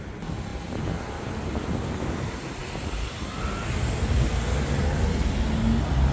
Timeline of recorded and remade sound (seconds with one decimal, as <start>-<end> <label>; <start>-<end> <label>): 0.0-6.1 recorded